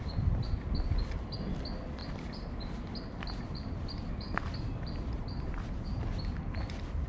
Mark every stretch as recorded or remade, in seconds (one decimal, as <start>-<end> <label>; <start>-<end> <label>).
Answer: 0.0-2.0 recorded; 2.0-5.8 remade; 5.8-7.1 recorded